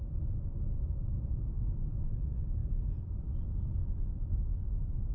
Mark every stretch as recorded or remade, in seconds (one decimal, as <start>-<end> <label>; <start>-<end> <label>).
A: 0.0-2.6 recorded; 2.6-3.2 remade; 3.2-3.8 recorded; 3.8-4.3 remade; 4.3-5.1 recorded